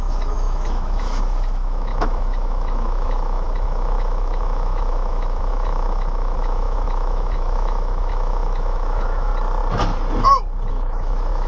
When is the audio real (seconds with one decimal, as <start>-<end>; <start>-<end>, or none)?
9.3-10.7